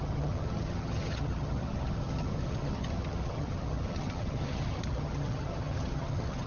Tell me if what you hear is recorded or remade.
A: remade